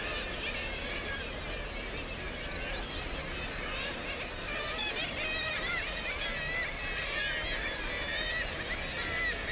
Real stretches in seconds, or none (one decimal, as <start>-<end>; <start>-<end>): 0.0-9.5